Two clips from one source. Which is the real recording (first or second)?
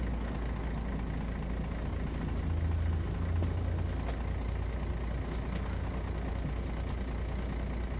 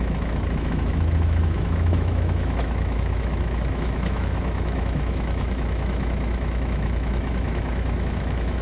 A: first